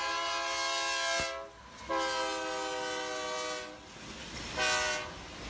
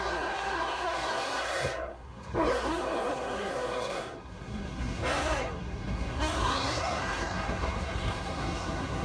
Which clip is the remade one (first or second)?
second